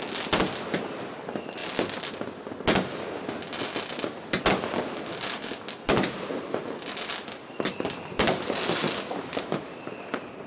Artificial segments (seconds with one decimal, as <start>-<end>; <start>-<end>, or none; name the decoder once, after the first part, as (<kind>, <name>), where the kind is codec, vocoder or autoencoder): none